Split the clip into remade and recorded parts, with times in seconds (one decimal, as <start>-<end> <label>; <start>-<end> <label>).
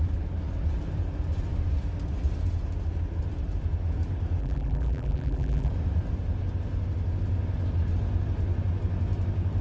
0.0-4.4 recorded; 4.4-5.7 remade; 5.7-9.6 recorded